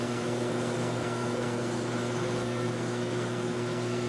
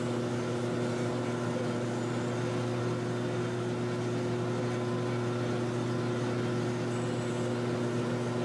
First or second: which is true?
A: second